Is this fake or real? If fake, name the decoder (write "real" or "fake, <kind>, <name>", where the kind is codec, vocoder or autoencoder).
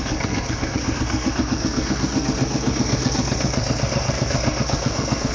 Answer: fake, codec, SNAC